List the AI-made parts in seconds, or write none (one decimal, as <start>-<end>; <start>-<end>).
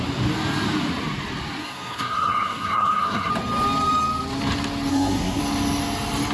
1.6-3.3; 4.9-5.4